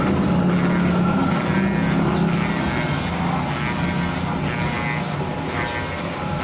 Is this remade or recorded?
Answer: recorded